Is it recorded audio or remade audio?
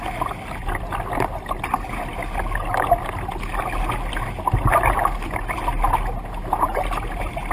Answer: recorded